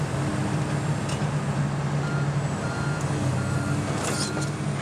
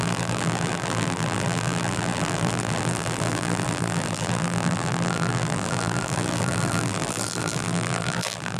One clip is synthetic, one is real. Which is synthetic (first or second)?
second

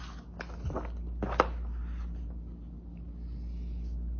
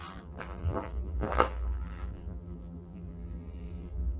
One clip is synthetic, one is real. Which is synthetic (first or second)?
second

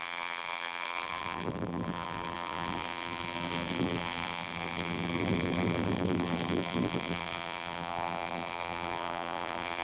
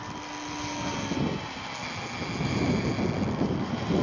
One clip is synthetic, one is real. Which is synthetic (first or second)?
first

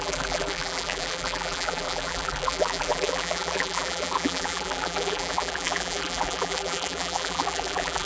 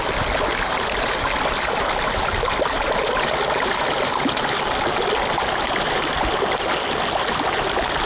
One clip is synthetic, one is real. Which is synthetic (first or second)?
first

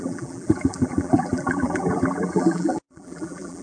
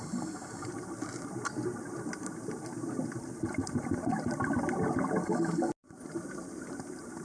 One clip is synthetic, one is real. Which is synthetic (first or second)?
first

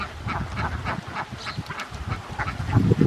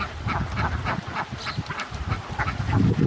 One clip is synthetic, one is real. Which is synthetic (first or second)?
second